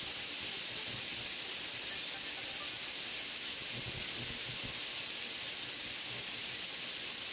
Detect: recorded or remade recorded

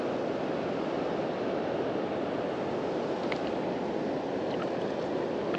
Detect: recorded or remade recorded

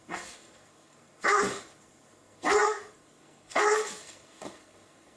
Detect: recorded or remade remade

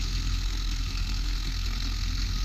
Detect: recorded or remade remade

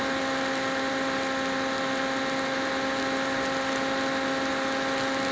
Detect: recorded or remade recorded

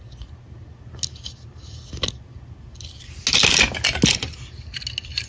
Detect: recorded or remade recorded